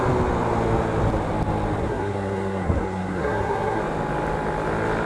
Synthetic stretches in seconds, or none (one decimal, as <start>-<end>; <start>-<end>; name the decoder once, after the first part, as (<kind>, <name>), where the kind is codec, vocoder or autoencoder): 1.8-3.8 (codec, SNAC)